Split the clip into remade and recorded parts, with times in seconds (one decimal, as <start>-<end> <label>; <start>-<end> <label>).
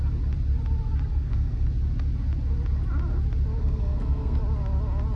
0.0-1.1 recorded; 1.1-1.7 remade; 1.7-3.6 recorded; 3.6-4.4 remade; 4.4-5.2 recorded